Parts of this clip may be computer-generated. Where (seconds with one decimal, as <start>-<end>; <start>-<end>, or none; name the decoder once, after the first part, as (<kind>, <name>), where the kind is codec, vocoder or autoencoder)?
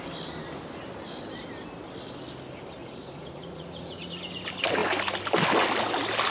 2.8-4.1 (vocoder, Vocos)